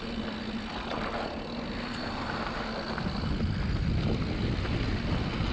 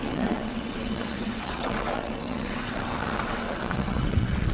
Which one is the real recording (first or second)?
first